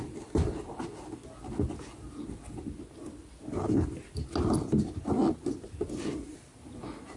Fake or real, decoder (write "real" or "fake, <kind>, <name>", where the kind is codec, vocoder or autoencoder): real